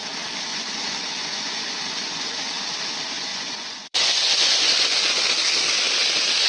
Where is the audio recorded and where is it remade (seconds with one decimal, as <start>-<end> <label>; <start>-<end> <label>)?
0.0-0.5 recorded; 0.5-2.5 remade; 2.5-3.3 recorded; 3.3-5.2 remade; 5.2-6.5 recorded